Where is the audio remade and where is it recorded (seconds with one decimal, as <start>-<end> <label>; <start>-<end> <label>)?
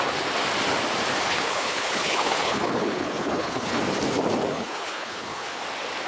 0.0-1.3 recorded; 1.3-3.8 remade; 3.8-4.5 recorded; 4.5-5.6 remade; 5.6-6.1 recorded